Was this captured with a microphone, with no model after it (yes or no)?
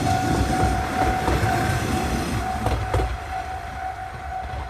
yes